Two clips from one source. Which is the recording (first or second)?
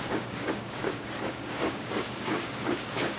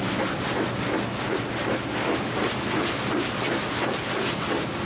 second